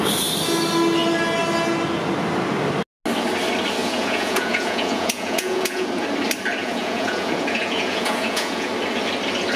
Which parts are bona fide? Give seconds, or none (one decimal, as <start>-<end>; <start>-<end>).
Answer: 0.0-3.8; 5.9-6.6; 8.7-9.6